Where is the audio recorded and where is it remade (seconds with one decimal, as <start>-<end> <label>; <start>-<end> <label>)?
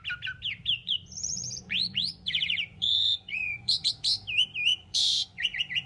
0.0-0.8 recorded; 0.8-3.9 remade; 3.9-4.7 recorded; 4.7-5.9 remade